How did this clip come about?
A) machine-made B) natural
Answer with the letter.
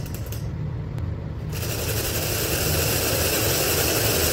B